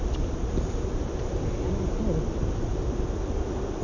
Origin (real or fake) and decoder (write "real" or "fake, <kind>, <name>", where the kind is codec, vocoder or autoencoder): real